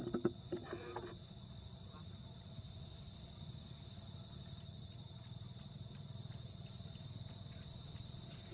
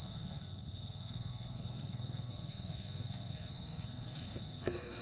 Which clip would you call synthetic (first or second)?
second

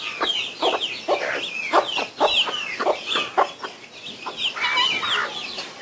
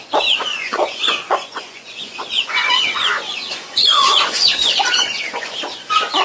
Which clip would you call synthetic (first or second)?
second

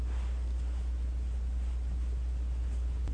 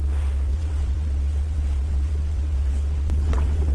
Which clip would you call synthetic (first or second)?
second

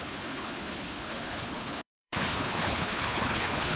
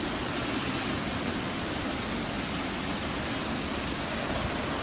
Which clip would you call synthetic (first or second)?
first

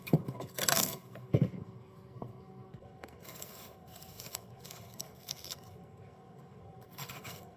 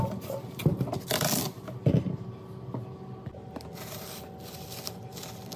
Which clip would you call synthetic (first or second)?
first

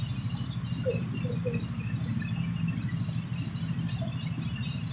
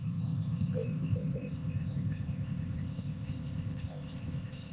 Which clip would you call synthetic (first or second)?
second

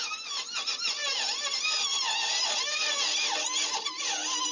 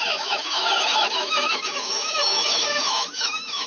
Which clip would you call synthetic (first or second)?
second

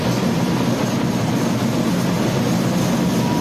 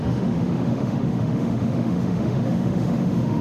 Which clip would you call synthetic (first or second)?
second